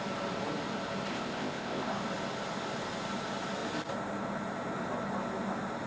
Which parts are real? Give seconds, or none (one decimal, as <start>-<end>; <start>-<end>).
0.0-1.1; 1.9-5.9